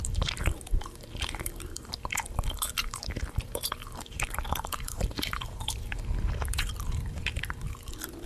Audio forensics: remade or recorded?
remade